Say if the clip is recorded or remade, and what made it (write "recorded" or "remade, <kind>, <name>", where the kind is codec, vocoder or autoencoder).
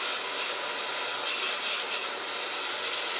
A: recorded